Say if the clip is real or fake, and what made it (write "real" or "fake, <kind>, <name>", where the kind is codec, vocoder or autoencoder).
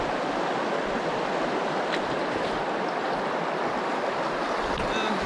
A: real